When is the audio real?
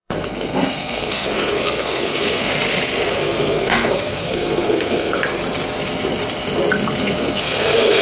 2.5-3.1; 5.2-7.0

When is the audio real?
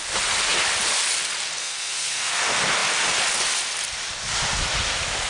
0.0-1.6; 2.4-5.3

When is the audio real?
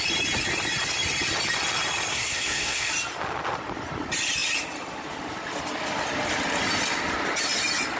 0.0-2.1; 2.9-8.0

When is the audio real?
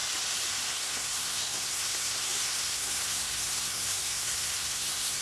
0.0-0.7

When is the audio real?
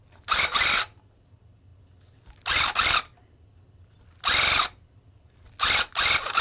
0.0-6.4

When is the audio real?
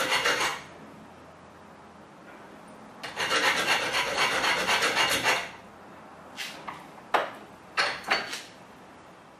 0.0-9.4